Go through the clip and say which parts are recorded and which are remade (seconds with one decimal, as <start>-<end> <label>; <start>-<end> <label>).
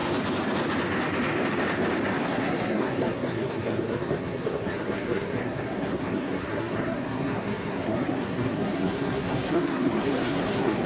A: 0.0-2.2 recorded; 2.2-10.9 remade